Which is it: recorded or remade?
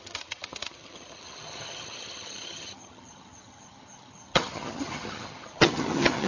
remade